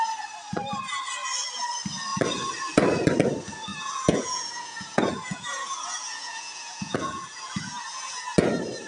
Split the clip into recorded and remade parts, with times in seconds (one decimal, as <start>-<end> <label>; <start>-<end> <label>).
0.0-3.7 recorded; 3.7-8.3 remade; 8.3-8.9 recorded